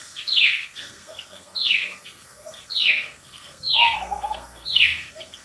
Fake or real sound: fake